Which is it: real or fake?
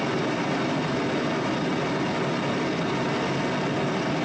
real